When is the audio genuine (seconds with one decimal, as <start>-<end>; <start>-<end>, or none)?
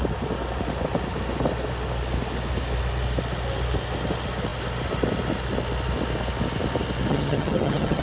0.0-7.1